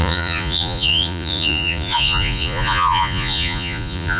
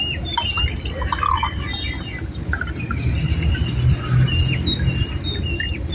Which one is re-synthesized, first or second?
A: first